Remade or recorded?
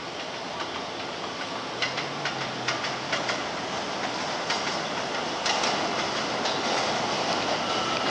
recorded